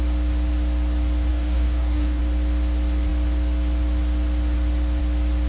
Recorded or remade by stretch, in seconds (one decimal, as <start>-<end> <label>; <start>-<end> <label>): 0.0-1.3 recorded; 1.3-2.2 remade; 2.2-5.5 recorded

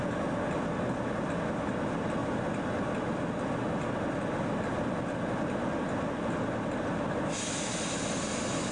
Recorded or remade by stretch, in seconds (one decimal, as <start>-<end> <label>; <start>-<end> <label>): 0.0-8.7 recorded

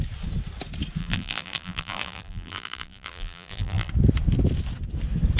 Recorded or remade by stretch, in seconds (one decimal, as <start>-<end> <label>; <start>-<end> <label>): 0.0-1.0 recorded; 1.0-3.9 remade; 3.9-5.4 recorded

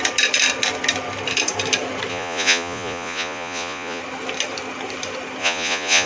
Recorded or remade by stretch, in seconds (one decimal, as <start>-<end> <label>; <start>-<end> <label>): 0.0-2.1 recorded; 2.1-4.0 remade; 4.0-5.4 recorded; 5.4-6.1 remade

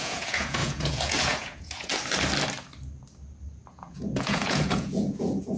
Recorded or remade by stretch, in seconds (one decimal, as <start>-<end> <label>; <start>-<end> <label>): 0.0-1.9 remade; 1.9-3.7 recorded; 3.7-5.6 remade

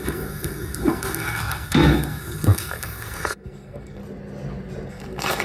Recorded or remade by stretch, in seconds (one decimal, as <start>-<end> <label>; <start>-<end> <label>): 0.0-4.0 remade; 4.0-4.9 recorded; 4.9-5.4 remade

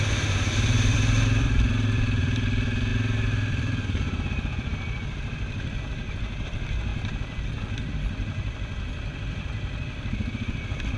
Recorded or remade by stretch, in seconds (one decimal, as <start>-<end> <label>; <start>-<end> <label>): 0.0-2.9 remade; 2.9-3.5 recorded; 3.5-6.9 remade; 6.9-7.9 recorded; 7.9-11.0 remade

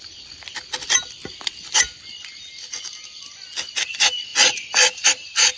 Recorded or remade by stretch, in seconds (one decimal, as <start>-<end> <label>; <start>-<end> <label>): 0.0-5.6 recorded